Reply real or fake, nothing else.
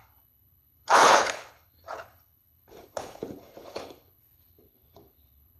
fake